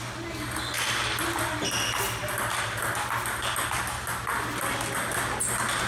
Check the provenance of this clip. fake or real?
real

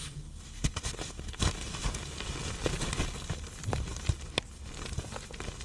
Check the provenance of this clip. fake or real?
real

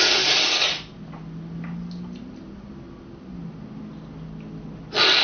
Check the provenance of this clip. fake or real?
real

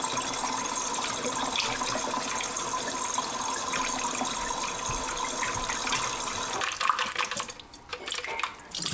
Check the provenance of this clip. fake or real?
real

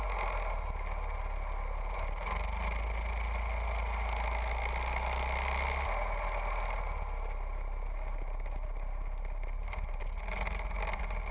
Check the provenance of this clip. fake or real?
real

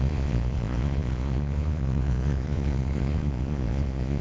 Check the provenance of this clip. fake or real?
fake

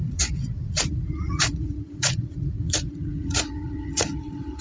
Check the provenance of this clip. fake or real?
fake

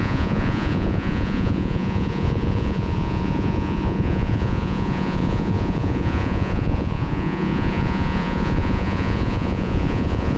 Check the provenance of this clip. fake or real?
fake